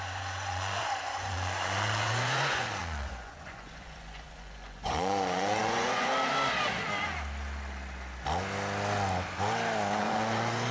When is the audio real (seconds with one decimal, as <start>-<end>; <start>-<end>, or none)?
6.1-10.0